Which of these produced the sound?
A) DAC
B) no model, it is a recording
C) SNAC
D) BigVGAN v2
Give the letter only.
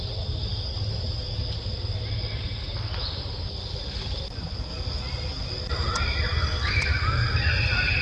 B